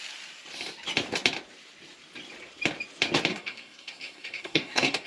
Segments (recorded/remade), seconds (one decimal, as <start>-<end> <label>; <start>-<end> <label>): 0.0-3.3 recorded; 3.3-5.1 remade